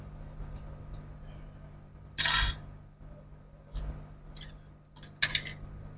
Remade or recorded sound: recorded